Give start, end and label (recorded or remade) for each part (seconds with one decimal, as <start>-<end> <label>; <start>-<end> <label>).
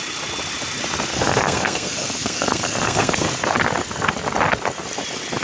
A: 0.0-1.1 recorded; 1.1-3.3 remade; 3.3-5.4 recorded